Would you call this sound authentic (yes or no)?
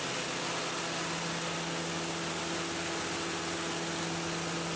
yes